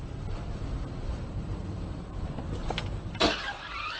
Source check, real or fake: real